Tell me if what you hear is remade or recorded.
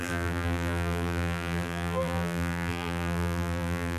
remade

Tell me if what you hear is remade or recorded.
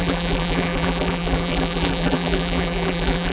remade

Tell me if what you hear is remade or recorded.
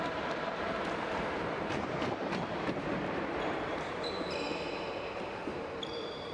remade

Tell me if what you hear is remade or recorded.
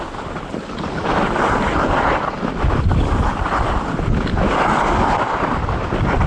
remade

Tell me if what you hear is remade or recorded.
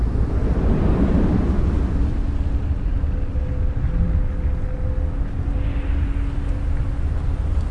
recorded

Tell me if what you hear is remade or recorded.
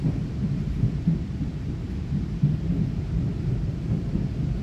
remade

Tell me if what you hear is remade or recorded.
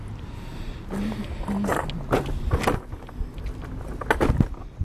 recorded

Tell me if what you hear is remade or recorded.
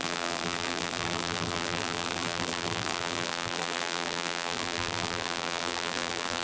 remade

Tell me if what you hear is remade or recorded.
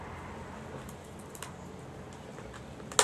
recorded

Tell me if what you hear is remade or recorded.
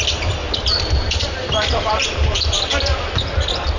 remade